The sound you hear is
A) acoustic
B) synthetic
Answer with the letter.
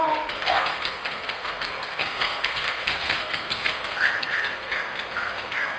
B